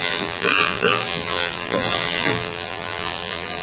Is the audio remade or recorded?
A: remade